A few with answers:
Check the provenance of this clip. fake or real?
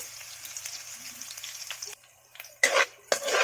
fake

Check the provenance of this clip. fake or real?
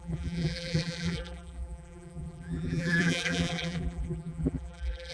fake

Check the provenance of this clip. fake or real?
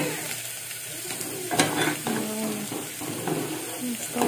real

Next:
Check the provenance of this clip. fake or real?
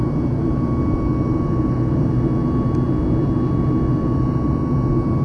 real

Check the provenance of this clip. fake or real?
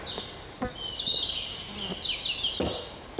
real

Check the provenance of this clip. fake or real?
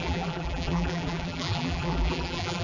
fake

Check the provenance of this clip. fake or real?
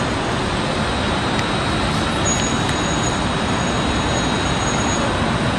real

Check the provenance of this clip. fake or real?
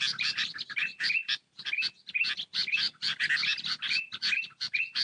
fake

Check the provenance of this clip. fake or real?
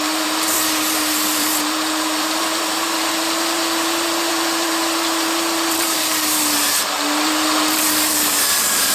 fake